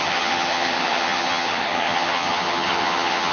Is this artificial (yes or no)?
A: yes